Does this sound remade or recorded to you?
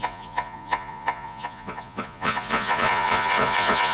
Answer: remade